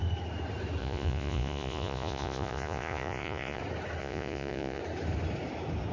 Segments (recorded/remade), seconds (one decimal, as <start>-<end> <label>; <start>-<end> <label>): 0.0-0.8 recorded; 0.8-3.6 remade; 3.6-4.0 recorded; 4.0-4.8 remade; 4.8-5.9 recorded